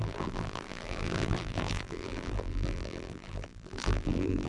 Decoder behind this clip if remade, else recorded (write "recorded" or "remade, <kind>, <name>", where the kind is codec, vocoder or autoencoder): remade, vocoder, BigVGAN v2